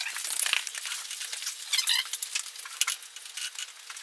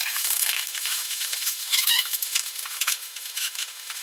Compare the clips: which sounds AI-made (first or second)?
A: second